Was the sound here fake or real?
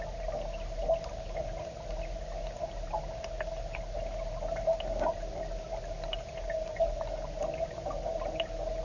real